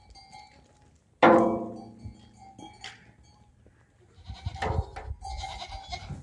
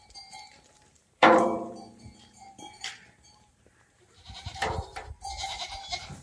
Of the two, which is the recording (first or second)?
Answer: first